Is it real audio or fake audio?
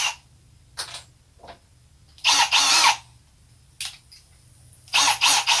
real